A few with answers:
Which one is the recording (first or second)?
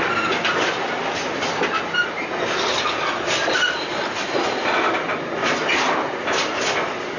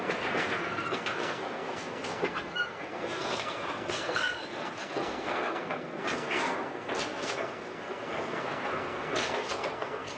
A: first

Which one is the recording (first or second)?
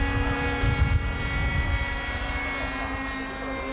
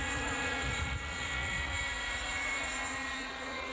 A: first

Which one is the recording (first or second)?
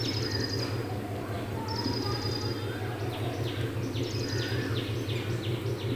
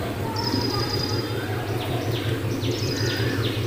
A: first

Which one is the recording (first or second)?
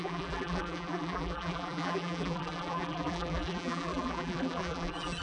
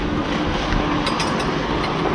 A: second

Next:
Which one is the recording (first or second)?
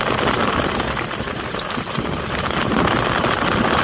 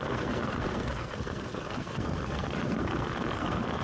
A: first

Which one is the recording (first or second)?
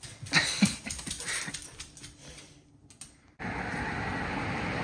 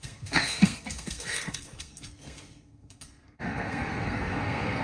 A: first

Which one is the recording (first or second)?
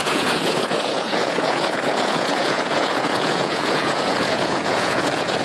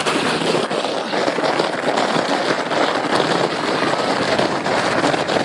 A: second